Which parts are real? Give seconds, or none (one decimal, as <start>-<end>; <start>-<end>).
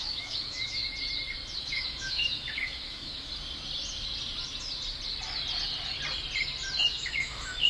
0.8-1.6; 3.3-6.8